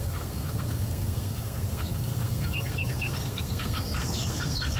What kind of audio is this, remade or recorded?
remade